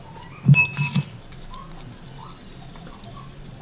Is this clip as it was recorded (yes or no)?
yes